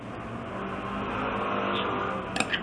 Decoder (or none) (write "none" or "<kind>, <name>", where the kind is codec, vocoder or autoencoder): none